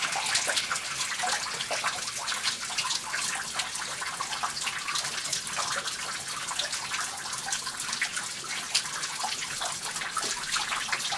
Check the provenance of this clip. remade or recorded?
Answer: recorded